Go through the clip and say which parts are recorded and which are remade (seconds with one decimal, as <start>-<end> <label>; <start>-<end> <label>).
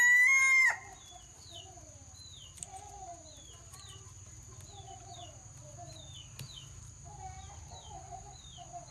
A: 0.0-8.9 recorded